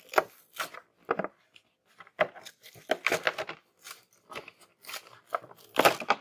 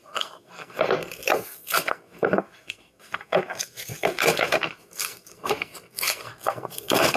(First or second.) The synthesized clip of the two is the second